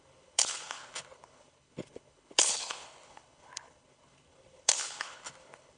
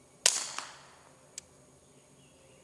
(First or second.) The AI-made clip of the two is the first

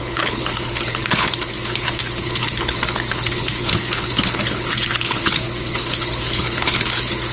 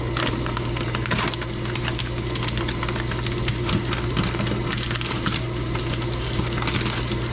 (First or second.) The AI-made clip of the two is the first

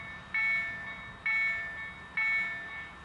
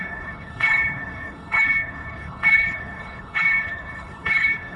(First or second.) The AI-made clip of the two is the second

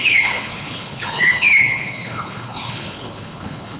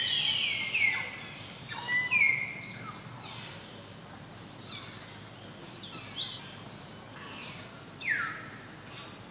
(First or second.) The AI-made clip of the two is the first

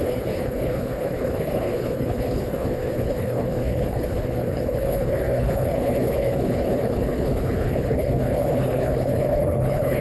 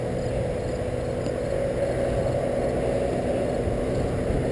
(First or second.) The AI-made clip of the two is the first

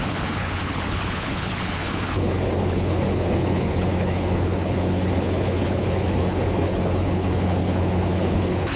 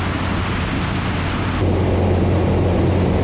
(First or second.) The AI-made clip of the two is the first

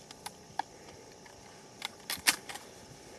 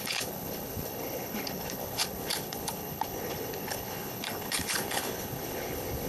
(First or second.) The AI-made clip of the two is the second